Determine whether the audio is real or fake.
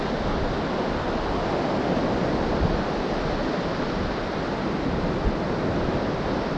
real